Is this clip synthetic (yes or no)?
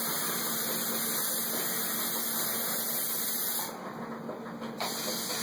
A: no